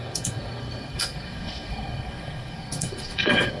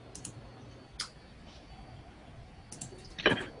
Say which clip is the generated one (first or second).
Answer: first